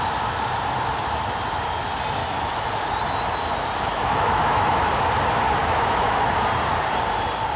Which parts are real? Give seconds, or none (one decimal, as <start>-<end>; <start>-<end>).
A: 0.0-2.2; 2.7-3.9; 4.9-5.6; 6.3-7.6